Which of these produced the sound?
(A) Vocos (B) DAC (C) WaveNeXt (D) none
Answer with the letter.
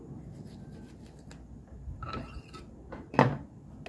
D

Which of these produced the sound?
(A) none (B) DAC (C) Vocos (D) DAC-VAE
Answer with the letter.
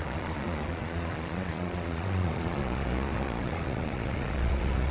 C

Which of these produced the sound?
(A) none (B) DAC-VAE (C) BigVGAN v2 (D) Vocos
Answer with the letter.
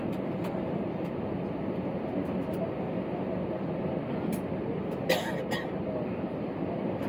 A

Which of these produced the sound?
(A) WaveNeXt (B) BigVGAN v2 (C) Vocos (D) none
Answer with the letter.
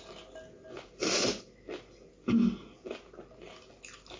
D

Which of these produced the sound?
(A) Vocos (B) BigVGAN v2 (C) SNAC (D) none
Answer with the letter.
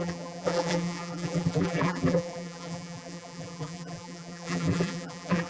B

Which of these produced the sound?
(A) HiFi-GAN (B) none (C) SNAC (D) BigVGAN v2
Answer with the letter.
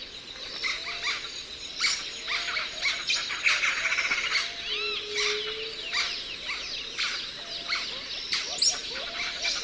B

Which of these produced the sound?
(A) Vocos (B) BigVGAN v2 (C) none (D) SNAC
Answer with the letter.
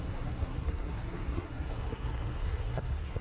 D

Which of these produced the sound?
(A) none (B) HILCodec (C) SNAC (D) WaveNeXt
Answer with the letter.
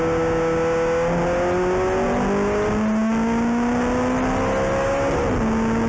A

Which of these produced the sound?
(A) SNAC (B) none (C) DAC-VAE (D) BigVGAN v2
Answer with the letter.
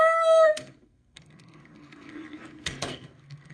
A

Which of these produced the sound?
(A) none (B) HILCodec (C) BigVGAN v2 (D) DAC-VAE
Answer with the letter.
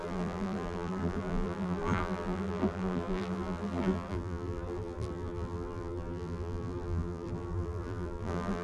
C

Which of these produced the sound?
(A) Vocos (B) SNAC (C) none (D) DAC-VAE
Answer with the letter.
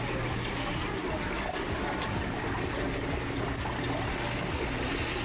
C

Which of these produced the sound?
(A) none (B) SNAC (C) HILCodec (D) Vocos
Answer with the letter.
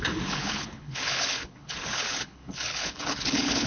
C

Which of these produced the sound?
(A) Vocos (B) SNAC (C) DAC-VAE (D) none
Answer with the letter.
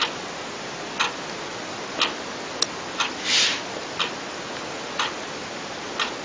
D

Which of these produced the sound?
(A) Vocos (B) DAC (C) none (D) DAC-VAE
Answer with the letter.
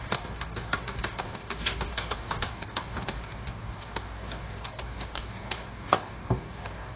B